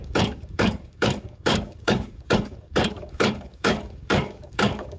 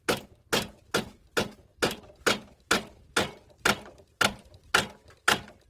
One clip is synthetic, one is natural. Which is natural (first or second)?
second